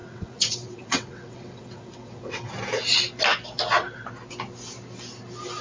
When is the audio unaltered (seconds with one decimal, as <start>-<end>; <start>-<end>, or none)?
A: 2.5-5.6